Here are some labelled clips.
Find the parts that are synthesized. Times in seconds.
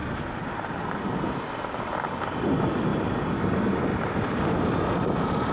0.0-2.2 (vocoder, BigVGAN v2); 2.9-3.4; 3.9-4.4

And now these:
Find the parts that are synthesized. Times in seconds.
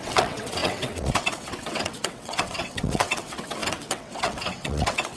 0.0-5.2 (vocoder, WaveNeXt)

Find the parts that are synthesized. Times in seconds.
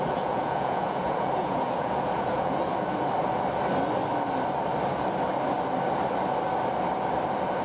0.0-2.7 (vocoder, Vocos)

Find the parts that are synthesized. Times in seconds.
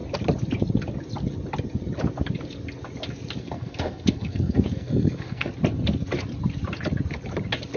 3.4-5.5 (codec, SNAC)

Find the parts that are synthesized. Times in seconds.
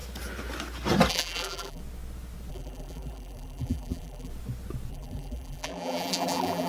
1.1-1.8 (vocoder, BigVGAN v2); 2.5-4.3; 4.9-6.7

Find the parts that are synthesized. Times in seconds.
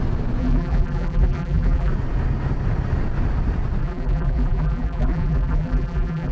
0.4-1.9 (vocoder, BigVGAN v2); 3.8-6.3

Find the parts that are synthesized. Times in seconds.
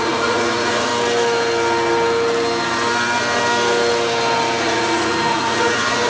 0.0-0.9 (vocoder, Vocos); 4.6-6.1